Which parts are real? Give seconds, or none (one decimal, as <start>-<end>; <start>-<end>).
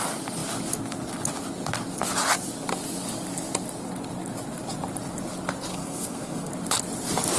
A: 0.0-5.7; 6.5-7.4